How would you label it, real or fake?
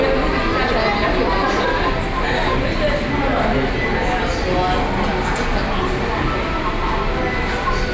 real